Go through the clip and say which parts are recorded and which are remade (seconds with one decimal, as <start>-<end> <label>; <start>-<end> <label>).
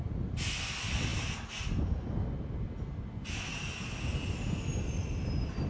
0.0-5.7 recorded